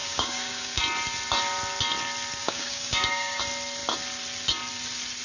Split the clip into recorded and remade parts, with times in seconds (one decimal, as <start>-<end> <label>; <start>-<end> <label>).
0.0-0.8 remade; 0.8-2.4 recorded; 2.4-3.4 remade; 3.4-5.2 recorded